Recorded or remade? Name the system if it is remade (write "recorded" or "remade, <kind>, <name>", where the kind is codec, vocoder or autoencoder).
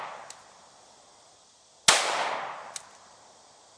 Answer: recorded